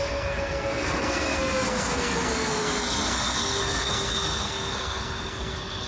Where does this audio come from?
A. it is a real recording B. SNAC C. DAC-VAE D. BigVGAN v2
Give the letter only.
B